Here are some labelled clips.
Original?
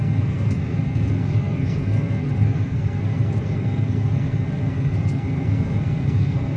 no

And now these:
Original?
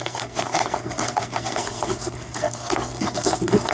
no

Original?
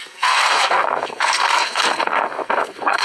no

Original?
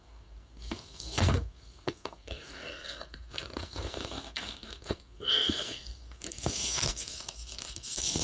no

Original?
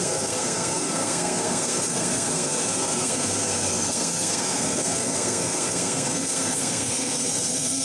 no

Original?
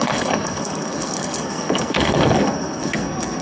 no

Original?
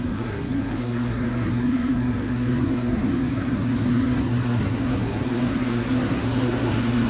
no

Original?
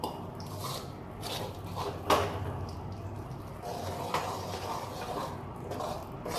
yes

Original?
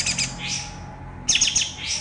yes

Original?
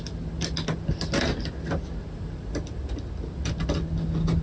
yes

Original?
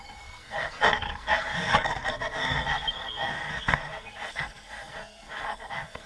no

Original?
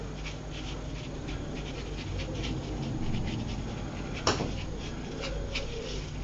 yes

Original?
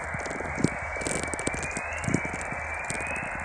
yes